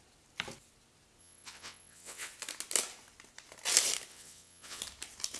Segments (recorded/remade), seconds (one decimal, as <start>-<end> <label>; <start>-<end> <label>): 0.0-1.2 recorded; 1.2-2.3 remade; 2.3-4.1 recorded; 4.1-4.8 remade; 4.8-5.4 recorded